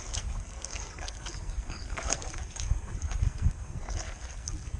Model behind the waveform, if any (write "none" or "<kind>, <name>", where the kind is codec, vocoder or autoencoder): codec, SNAC